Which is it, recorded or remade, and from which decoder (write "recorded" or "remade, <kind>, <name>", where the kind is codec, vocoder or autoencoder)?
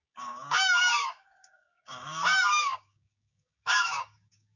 remade, codec, DAC